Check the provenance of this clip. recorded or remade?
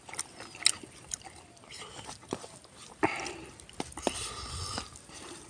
recorded